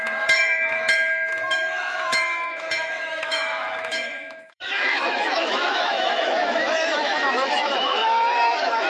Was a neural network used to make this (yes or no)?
yes